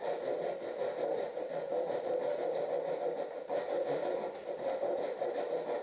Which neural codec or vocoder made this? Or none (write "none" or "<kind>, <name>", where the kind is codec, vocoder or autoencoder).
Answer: none